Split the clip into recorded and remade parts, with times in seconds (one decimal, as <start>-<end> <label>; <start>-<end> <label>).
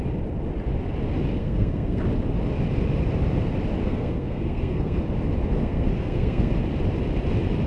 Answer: 0.0-1.4 recorded; 1.4-2.0 remade; 2.0-3.8 recorded; 3.8-5.0 remade; 5.0-5.6 recorded; 5.6-6.5 remade; 6.5-7.7 recorded